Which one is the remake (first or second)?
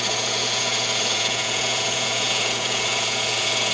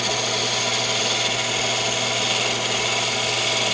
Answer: first